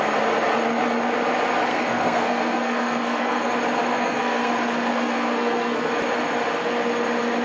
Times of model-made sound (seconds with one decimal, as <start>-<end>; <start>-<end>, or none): 1.7-3.5; 3.9-4.5; 4.9-5.9